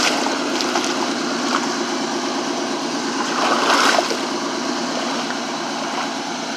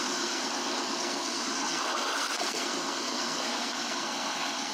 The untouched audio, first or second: first